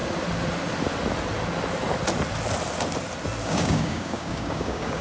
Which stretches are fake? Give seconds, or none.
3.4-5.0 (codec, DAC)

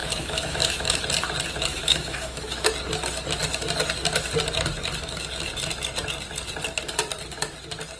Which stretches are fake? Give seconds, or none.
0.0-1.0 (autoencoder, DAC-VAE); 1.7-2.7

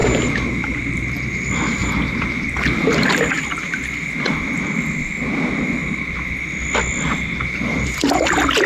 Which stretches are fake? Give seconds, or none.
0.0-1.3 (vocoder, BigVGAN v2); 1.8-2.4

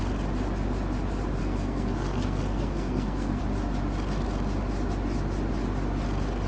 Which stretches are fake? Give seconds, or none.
1.4-3.4 (codec, SNAC)